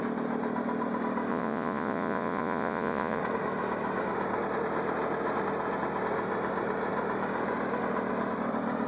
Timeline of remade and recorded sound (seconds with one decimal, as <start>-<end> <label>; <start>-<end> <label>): 0.0-1.3 recorded; 1.3-3.2 remade; 3.2-8.9 recorded